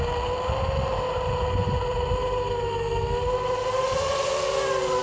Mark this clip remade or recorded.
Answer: recorded